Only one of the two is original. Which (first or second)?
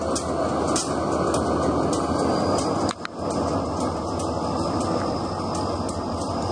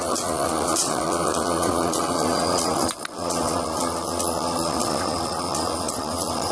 first